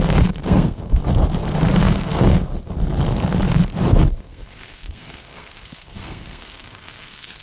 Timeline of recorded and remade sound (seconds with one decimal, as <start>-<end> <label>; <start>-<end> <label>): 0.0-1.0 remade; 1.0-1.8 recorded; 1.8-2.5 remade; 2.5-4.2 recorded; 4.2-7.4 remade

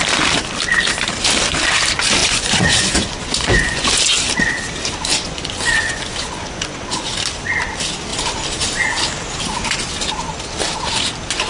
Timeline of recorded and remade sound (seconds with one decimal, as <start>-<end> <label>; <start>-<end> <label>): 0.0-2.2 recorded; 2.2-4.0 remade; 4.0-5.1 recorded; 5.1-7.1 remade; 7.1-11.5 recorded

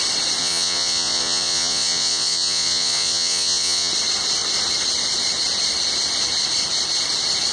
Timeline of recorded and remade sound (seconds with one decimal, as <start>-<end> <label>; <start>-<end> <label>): 0.0-0.4 recorded; 0.4-3.9 remade; 3.9-7.5 recorded

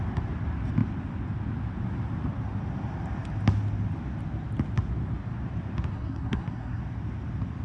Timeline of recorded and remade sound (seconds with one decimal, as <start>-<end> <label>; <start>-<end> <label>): 0.0-5.9 recorded; 5.9-6.8 remade; 6.8-7.6 recorded

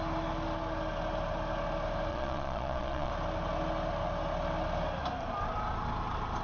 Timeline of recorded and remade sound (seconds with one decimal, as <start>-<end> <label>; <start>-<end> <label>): 0.0-2.1 recorded; 2.1-3.1 remade; 3.1-6.4 recorded

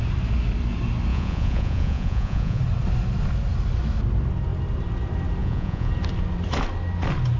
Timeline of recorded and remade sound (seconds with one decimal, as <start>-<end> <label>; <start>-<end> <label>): 0.0-1.1 recorded; 1.1-2.6 remade; 2.6-5.4 recorded; 5.4-5.9 remade; 5.9-7.4 recorded